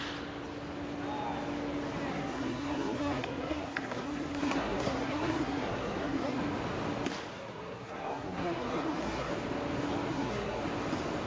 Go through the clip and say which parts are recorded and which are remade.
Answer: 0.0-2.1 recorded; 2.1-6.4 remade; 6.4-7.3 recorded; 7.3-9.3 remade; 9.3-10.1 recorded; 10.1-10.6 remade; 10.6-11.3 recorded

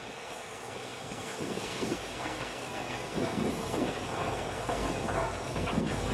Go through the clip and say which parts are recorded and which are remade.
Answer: 0.0-6.1 remade

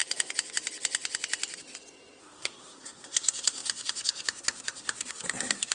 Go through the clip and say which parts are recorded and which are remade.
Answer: 0.0-2.2 recorded; 2.2-5.7 remade

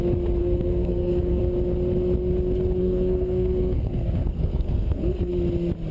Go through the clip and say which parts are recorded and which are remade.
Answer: 0.0-0.4 recorded; 0.4-1.4 remade; 1.4-2.8 recorded; 2.8-5.3 remade; 5.3-5.9 recorded

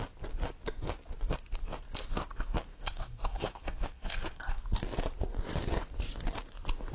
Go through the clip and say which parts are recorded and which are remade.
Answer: 0.0-2.7 recorded; 2.7-4.6 remade; 4.6-6.9 recorded

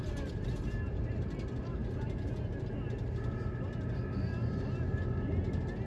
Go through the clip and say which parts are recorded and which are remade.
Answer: 0.0-5.9 recorded

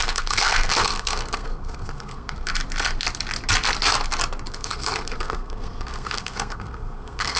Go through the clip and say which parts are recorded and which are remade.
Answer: 0.0-2.5 remade; 2.5-4.5 recorded; 4.5-7.4 remade

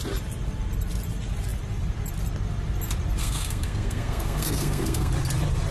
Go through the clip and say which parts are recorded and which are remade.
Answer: 0.0-3.2 recorded; 3.2-5.1 remade; 5.1-5.7 recorded